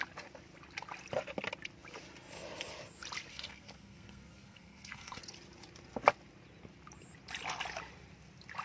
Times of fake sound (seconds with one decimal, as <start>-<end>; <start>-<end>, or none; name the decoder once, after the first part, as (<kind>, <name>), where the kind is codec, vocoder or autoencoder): 3.3-5.2 (codec, SNAC)